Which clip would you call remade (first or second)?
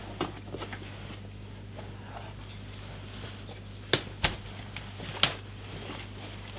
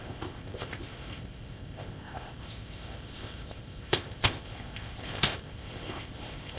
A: second